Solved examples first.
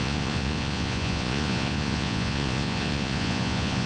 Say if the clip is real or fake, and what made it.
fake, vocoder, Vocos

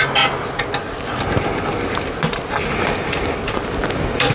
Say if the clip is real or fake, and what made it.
real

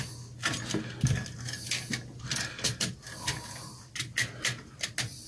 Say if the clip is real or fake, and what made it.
real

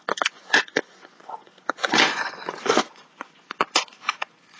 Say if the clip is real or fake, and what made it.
fake, vocoder, Vocos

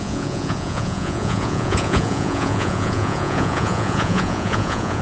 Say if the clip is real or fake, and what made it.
fake, vocoder, Vocos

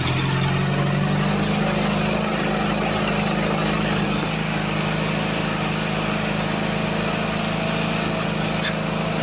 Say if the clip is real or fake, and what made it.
real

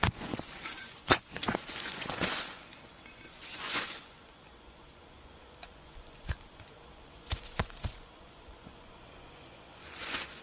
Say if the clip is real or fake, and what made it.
fake, vocoder, Vocos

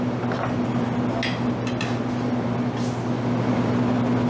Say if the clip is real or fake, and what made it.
real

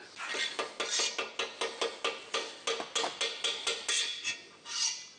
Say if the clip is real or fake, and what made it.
real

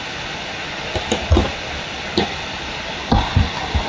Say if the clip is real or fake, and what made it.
real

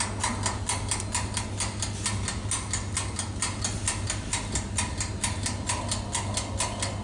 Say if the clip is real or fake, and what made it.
real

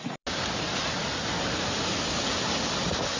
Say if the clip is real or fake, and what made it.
real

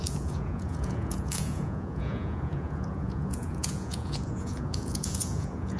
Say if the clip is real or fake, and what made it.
fake, vocoder, Vocos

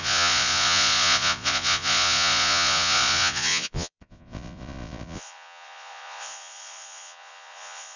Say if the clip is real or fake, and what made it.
fake, vocoder, Vocos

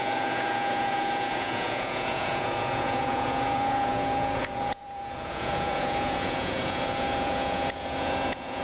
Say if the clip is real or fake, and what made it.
fake, vocoder, Vocos